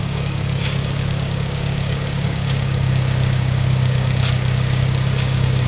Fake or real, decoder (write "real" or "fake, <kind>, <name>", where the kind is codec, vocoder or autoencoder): fake, codec, DAC